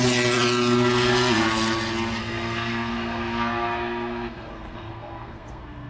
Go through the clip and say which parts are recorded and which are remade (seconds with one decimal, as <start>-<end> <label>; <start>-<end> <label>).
0.0-2.2 recorded; 2.2-5.9 remade